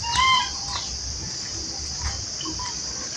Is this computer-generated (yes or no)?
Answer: no